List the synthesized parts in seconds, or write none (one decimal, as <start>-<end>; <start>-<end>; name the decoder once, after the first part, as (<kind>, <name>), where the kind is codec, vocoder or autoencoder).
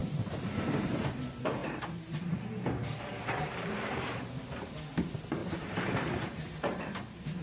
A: 0.0-1.2 (vocoder, BigVGAN v2); 1.6-4.2; 5.4-6.9